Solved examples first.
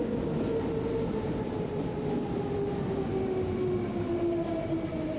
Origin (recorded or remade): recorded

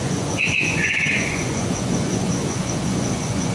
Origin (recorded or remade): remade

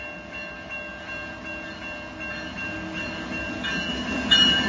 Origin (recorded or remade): recorded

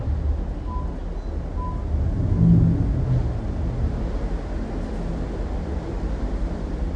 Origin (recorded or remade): recorded